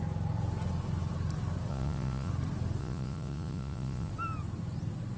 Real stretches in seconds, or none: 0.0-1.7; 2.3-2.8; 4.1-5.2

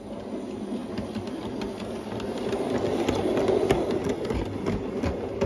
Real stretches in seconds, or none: 0.0-5.5

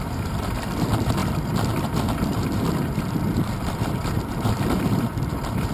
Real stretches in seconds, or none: none